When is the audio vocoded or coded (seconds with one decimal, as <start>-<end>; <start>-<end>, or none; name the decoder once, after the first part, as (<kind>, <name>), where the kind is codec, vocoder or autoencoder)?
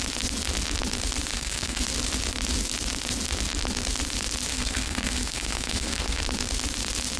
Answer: 1.3-1.8 (codec, SNAC); 4.5-6.2